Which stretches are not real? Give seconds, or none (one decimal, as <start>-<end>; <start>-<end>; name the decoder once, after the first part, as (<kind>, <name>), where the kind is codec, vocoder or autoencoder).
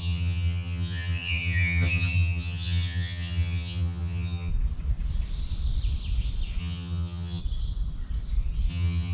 0.0-4.5 (vocoder, HiFi-GAN); 6.6-7.4; 8.7-9.1